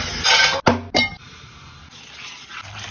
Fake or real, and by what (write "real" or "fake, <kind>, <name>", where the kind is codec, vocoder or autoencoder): real